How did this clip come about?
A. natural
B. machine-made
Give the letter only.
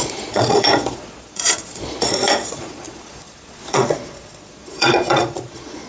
B